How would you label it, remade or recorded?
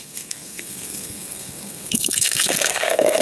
remade